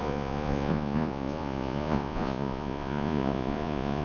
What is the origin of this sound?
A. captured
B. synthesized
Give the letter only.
B